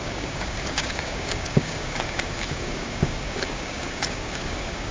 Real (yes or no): no